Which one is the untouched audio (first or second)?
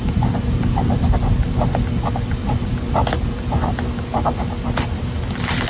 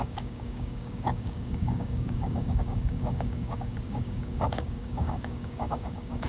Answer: first